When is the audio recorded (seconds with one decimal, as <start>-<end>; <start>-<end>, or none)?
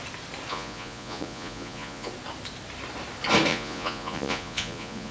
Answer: 0.0-0.5; 2.1-3.5